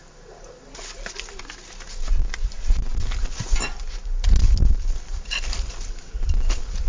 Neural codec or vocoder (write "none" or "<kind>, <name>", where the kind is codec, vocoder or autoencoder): none